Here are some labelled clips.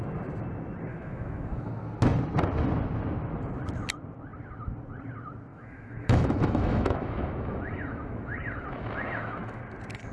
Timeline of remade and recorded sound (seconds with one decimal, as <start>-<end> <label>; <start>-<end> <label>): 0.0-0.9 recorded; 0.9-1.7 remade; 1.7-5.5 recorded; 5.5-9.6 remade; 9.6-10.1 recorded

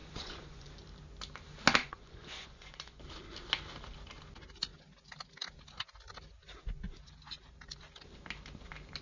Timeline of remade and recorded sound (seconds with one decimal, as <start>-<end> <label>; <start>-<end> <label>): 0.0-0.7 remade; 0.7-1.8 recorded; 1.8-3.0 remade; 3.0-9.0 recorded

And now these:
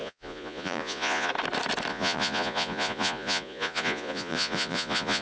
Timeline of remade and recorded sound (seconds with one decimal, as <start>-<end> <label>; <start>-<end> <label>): 0.0-1.3 remade; 1.3-1.9 recorded; 1.9-5.2 remade

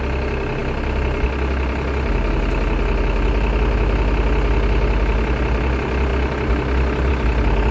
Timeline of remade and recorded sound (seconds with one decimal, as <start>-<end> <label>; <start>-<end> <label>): 0.0-7.7 recorded

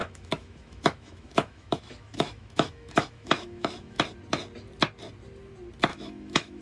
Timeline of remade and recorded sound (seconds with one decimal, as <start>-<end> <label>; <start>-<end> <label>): 0.0-4.0 remade; 4.0-5.9 recorded; 5.9-6.6 remade

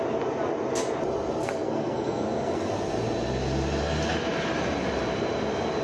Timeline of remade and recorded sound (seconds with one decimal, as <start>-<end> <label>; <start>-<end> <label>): 0.0-1.4 recorded; 1.4-2.7 remade; 2.7-5.8 recorded

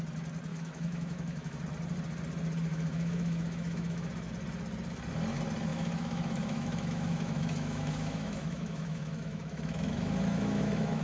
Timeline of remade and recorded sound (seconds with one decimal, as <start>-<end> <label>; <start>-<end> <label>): 0.0-0.5 recorded; 0.5-1.6 remade; 1.6-2.7 recorded; 2.7-4.3 remade; 4.3-5.7 recorded; 5.7-11.0 remade

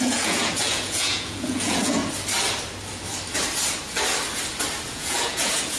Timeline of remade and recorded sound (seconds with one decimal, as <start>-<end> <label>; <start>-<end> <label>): 0.0-2.0 remade; 2.0-4.9 recorded; 4.9-5.8 remade